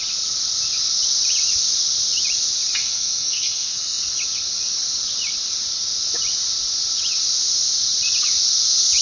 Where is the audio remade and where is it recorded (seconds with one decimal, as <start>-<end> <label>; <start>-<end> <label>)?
0.0-2.8 recorded; 2.8-4.0 remade; 4.0-9.0 recorded